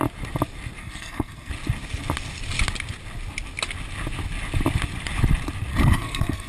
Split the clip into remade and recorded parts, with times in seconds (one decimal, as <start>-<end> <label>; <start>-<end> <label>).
0.0-0.8 recorded; 0.8-1.5 remade; 1.5-5.7 recorded; 5.7-6.5 remade